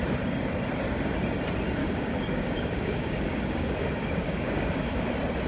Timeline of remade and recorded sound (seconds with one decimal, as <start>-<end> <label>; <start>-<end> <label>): 0.0-1.8 recorded; 1.8-5.1 remade; 5.1-5.5 recorded